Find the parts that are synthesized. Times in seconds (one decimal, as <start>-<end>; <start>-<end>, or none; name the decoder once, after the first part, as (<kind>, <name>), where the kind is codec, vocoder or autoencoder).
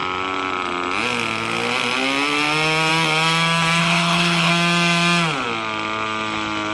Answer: 3.8-4.5 (codec, HILCodec)